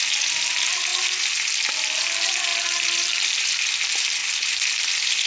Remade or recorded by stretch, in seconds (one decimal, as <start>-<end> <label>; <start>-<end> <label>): 0.0-5.3 recorded

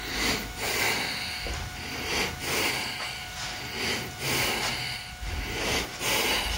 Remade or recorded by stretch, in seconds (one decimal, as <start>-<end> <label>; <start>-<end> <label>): 0.0-6.6 recorded